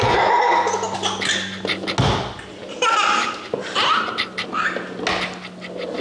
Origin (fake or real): real